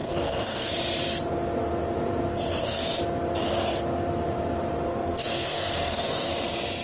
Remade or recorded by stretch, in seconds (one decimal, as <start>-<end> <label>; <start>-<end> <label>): 0.0-0.7 remade; 0.7-2.3 recorded; 2.3-3.0 remade; 3.0-4.9 recorded; 4.9-6.3 remade; 6.3-6.8 recorded